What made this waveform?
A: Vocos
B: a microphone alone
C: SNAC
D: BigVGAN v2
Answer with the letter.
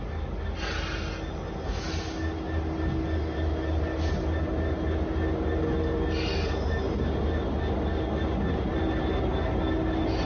B